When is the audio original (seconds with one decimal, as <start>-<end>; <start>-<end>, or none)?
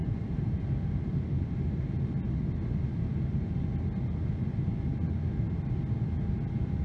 0.6-6.8